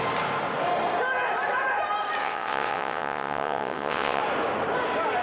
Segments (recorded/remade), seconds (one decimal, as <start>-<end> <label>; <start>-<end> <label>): 0.0-2.2 recorded; 2.2-4.2 remade; 4.2-5.2 recorded